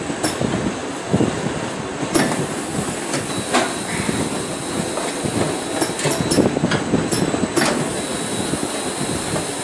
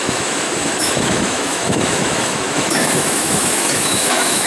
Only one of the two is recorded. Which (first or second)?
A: first